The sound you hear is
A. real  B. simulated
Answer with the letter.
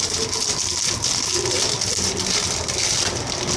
A